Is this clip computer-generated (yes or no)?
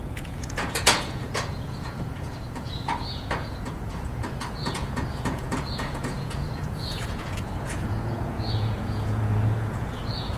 yes